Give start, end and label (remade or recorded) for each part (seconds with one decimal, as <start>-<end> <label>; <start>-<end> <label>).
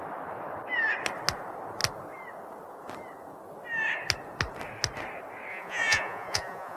0.0-5.5 recorded; 5.5-6.8 remade